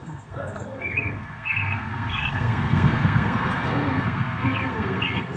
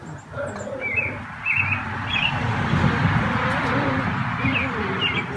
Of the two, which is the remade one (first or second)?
first